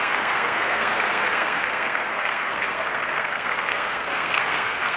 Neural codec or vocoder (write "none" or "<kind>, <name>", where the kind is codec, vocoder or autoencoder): codec, SNAC